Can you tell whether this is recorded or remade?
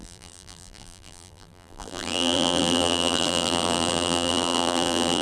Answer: remade